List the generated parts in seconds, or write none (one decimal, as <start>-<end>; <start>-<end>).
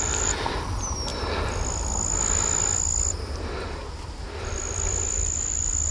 none